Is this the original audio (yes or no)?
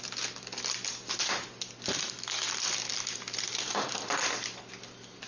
yes